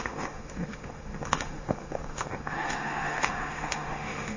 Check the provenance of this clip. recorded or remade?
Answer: remade